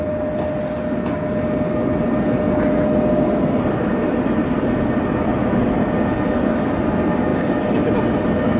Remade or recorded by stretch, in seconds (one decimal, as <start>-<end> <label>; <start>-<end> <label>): 0.0-7.3 recorded; 7.3-7.9 remade; 7.9-8.6 recorded